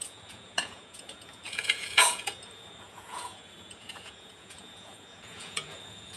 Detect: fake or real fake